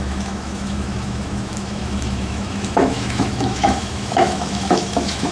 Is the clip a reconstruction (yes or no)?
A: yes